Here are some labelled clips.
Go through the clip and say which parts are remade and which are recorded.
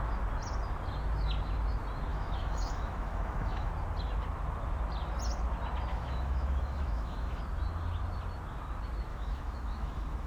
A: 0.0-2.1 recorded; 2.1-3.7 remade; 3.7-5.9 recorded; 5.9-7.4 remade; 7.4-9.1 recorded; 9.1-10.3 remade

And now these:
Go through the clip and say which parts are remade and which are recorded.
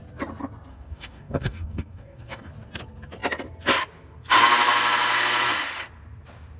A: 0.0-0.7 recorded; 0.7-2.5 remade; 2.5-6.6 recorded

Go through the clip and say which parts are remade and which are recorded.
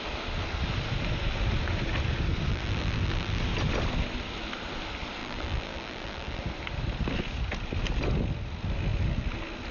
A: 0.0-2.5 recorded; 2.5-3.4 remade; 3.4-5.2 recorded; 5.2-6.4 remade; 6.4-9.7 recorded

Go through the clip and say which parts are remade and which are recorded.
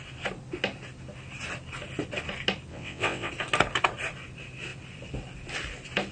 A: 0.0-2.7 recorded; 2.7-3.3 remade; 3.3-6.1 recorded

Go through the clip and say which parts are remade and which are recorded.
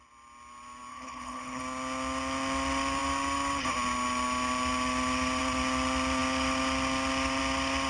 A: 0.0-0.9 recorded; 0.9-1.6 remade; 1.6-7.9 recorded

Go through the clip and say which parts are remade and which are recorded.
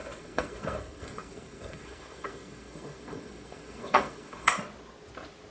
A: 0.0-4.5 remade; 4.5-5.5 recorded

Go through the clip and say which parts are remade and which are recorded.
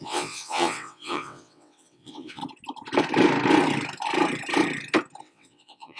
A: 0.0-2.4 remade; 2.4-5.2 recorded; 5.2-6.0 remade